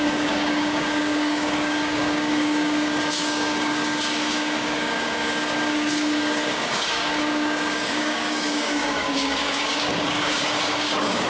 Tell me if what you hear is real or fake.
fake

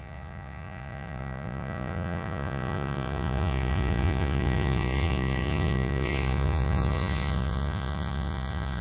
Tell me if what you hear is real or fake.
fake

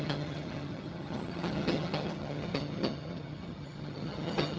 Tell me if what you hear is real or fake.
fake